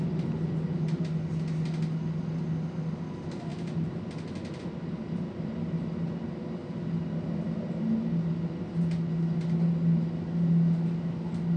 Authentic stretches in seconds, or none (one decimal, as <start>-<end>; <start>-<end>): 0.0-11.6